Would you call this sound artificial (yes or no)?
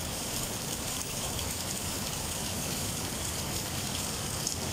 yes